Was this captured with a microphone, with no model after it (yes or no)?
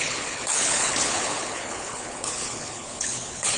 no